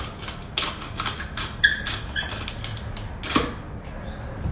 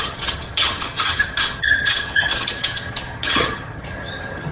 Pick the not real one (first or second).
second